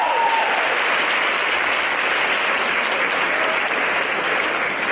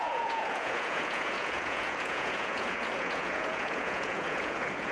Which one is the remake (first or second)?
second